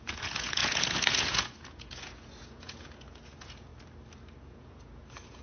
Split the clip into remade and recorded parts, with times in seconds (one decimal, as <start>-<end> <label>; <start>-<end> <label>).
0.0-3.7 remade; 3.7-4.4 recorded; 4.4-5.4 remade